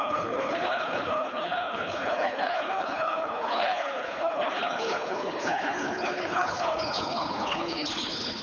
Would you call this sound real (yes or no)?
no